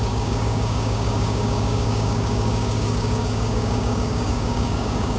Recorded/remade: remade